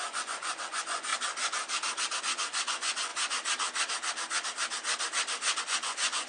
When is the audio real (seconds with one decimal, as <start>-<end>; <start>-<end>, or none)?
1.1-2.2; 3.1-5.6